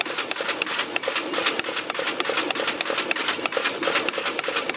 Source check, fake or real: real